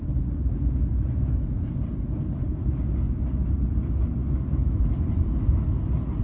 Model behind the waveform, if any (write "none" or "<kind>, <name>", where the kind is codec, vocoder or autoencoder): none